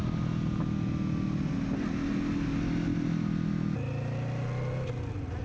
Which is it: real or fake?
real